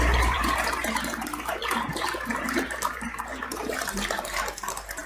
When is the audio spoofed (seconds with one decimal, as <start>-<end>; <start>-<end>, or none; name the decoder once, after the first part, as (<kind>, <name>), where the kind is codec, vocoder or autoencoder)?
0.0-5.1 (vocoder, BigVGAN v2)